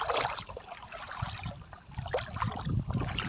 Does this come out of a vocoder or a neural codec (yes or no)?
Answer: no